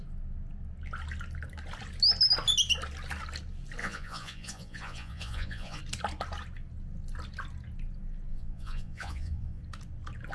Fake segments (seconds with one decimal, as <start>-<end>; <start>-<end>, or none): 3.8-5.8; 8.3-9.6